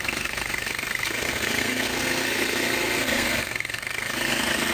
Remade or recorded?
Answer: remade